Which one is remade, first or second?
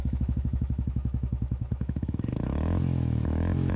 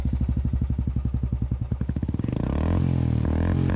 first